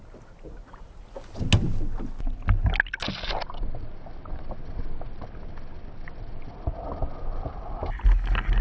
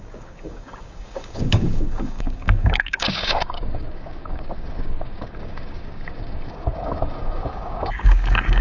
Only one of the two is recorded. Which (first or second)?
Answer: first